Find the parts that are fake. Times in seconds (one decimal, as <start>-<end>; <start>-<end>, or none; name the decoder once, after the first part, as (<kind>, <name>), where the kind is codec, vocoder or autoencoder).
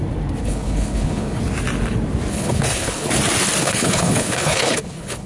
0.4-1.4 (codec, HILCodec); 2.3-3.1; 3.6-5.3